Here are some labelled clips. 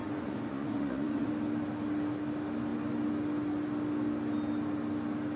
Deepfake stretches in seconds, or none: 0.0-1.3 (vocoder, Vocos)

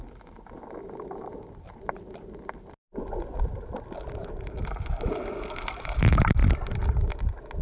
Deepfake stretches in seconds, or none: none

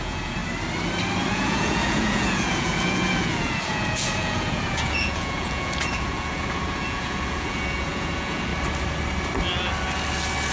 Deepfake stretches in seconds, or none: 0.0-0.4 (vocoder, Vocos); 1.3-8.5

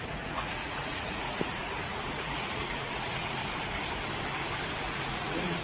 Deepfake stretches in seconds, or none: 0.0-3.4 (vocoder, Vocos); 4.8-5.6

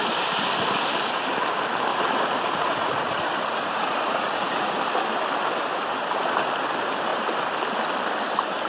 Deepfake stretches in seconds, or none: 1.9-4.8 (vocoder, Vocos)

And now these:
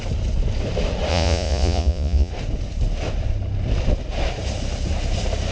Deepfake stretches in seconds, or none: 1.1-2.3 (vocoder, Vocos)

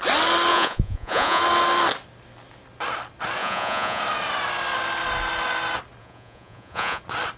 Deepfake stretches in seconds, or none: 0.5-1.4 (vocoder, Vocos); 3.4-4.0; 6.0-7.0